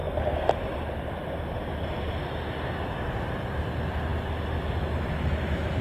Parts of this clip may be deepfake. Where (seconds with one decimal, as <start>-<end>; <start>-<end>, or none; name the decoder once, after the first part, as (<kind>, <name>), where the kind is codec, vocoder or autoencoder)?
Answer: none